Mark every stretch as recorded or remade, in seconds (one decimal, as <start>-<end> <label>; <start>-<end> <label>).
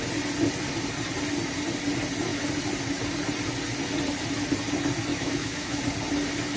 0.0-5.1 recorded; 5.1-5.8 remade; 5.8-6.6 recorded